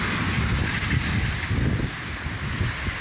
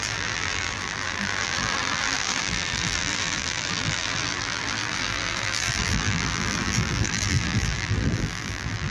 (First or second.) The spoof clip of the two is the second